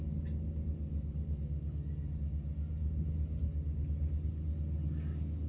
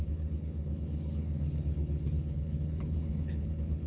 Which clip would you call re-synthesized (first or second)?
second